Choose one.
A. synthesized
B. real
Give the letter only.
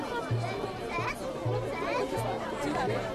B